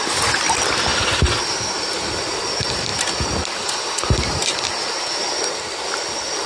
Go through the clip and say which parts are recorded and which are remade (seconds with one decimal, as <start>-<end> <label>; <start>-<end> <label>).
0.0-6.5 recorded